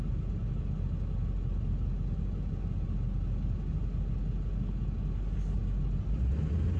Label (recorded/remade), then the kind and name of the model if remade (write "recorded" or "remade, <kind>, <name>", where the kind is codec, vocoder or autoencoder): recorded